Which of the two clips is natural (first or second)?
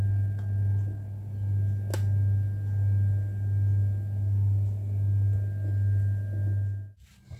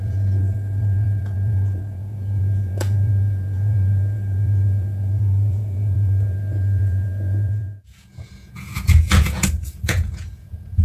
first